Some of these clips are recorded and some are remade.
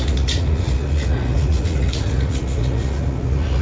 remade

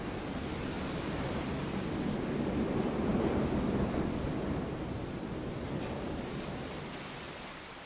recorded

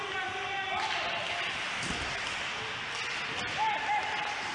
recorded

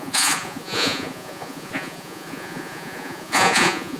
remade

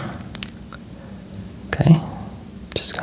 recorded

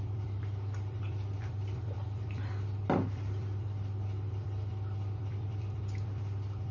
remade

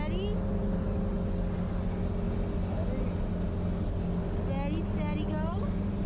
recorded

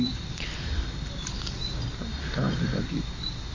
recorded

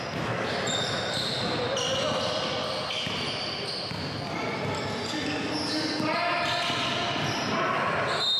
recorded